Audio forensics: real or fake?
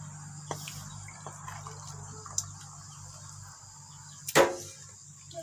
real